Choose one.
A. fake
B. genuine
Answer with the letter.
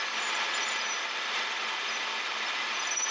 B